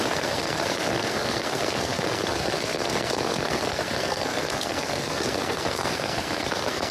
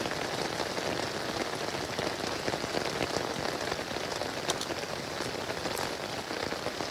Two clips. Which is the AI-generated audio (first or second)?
first